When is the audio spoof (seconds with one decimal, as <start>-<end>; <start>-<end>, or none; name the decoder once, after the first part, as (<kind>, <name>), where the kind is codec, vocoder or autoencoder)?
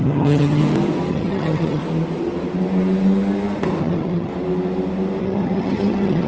0.0-0.6 (vocoder, HiFi-GAN); 1.1-1.8; 3.8-4.3; 5.2-6.3